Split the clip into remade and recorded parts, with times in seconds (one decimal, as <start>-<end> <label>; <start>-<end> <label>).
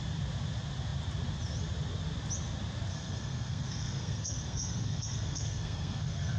0.0-2.9 recorded; 2.9-6.4 remade